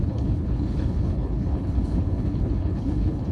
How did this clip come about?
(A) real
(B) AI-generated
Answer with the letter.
B